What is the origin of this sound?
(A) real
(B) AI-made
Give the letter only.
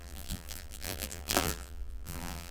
B